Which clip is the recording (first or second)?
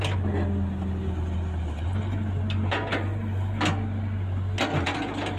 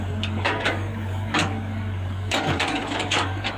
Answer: first